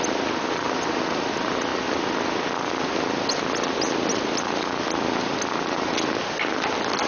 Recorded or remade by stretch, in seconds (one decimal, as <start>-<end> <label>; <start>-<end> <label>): 0.0-7.1 recorded